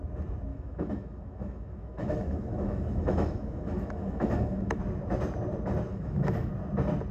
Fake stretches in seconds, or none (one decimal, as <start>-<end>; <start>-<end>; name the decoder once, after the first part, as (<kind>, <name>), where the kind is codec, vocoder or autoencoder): 0.5-4.8 (autoencoder, DAC-VAE); 5.9-6.5